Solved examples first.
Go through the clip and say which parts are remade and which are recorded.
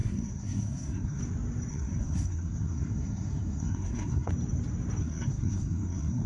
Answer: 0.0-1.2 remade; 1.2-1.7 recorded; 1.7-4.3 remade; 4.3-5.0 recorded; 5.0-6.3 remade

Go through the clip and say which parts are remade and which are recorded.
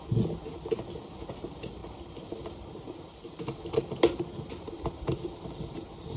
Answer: 0.0-6.2 recorded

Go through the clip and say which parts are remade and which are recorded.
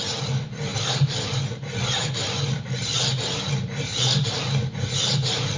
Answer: 0.0-5.6 recorded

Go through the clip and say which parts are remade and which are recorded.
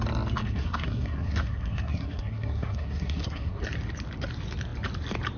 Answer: 0.0-0.4 recorded; 0.4-3.6 remade; 3.6-5.4 recorded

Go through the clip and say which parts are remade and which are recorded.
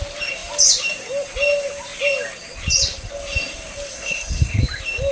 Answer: 0.0-3.9 recorded; 3.9-4.6 remade; 4.6-5.1 recorded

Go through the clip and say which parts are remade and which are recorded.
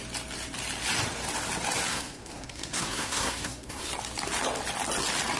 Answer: 0.0-1.9 recorded; 1.9-3.9 remade; 3.9-5.4 recorded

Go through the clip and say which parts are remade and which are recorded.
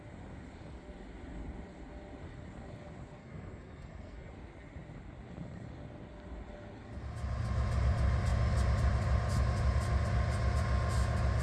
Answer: 0.0-3.2 recorded; 3.2-4.3 remade; 4.3-11.4 recorded